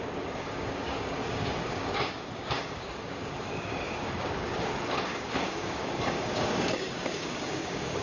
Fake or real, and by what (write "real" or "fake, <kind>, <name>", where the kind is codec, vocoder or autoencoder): fake, codec, DAC